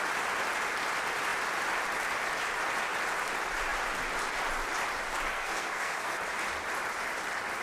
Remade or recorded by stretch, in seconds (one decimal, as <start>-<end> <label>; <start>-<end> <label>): 0.0-5.3 recorded; 5.3-6.2 remade; 6.2-7.6 recorded